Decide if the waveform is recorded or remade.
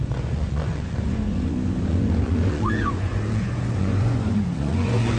remade